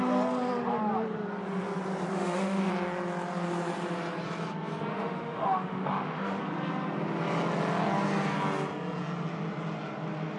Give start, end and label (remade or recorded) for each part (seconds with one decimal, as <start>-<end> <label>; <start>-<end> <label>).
0.0-2.1 recorded; 2.1-2.7 remade; 2.7-4.9 recorded; 4.9-6.4 remade; 6.4-10.4 recorded